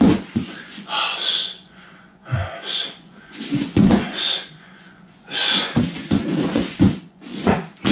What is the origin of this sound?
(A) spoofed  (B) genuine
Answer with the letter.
A